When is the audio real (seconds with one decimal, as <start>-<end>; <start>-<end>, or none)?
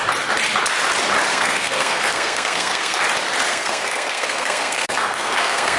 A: 0.0-1.3; 3.0-3.5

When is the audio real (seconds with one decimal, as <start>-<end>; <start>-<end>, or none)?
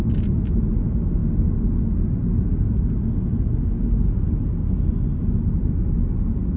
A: 0.0-6.6